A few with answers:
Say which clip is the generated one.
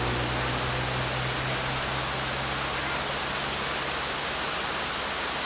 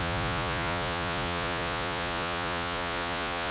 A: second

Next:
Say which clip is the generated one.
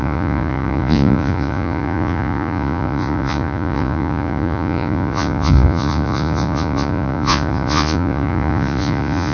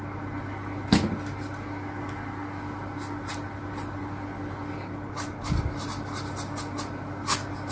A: first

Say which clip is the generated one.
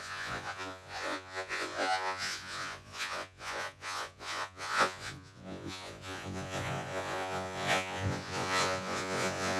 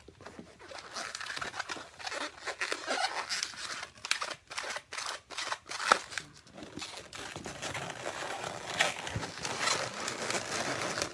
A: first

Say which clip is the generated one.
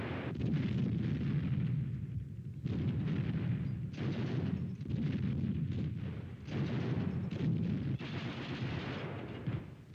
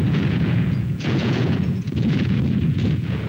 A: second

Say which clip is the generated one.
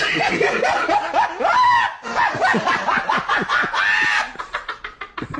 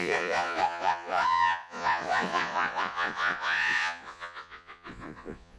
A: second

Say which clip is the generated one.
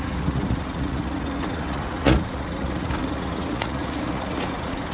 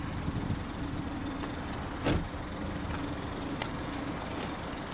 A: first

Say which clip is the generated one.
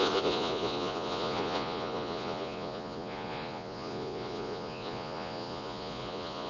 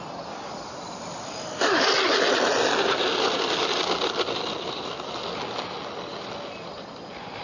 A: first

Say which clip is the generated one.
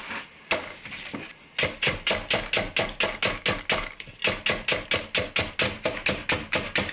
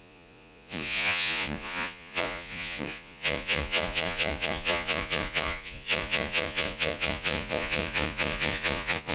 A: second